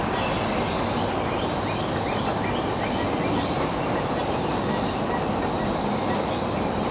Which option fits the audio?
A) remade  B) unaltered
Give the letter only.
B